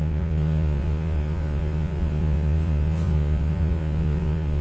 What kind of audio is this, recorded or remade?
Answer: remade